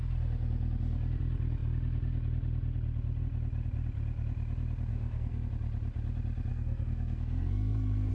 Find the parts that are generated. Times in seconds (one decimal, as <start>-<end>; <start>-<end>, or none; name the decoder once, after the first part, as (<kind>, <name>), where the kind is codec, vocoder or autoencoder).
4.9-5.5 (codec, SNAC); 6.5-8.1